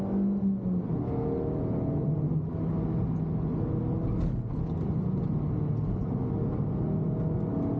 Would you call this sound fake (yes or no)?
no